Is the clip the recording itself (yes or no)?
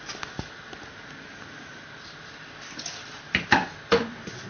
no